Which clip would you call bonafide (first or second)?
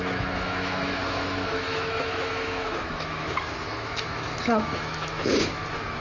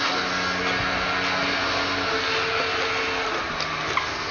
second